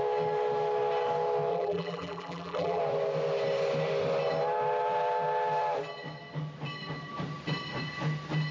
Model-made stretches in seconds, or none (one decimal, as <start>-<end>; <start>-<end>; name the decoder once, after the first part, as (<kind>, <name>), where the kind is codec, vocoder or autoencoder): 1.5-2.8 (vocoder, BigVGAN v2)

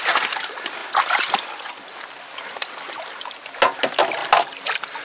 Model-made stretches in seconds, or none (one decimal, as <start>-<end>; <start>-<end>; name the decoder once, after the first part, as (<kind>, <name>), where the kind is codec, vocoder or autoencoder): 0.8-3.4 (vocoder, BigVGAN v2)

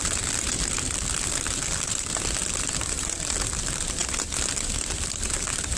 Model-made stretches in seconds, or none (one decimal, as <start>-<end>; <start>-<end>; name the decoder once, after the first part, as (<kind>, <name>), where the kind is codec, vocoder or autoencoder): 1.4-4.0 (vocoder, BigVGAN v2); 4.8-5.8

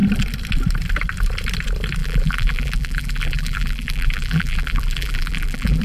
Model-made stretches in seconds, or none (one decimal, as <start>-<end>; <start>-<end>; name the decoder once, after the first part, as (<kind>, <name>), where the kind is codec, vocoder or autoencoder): 2.0-5.8 (vocoder, BigVGAN v2)

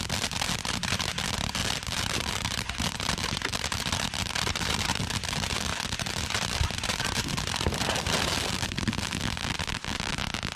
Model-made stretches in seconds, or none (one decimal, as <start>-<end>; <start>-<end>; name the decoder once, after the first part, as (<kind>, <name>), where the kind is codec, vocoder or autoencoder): 1.6-4.8 (vocoder, BigVGAN v2); 5.7-10.2